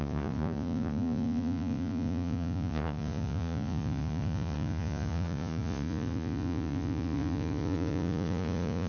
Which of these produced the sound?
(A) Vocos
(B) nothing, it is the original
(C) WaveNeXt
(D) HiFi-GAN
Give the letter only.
A